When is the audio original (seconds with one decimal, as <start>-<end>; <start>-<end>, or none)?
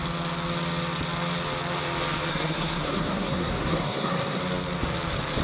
0.0-2.3; 4.4-5.4